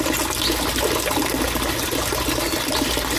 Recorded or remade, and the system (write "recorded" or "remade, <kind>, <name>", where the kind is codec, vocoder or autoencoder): recorded